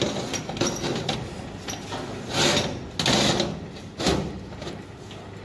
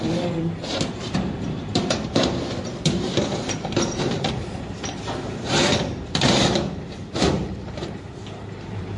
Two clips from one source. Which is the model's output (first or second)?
second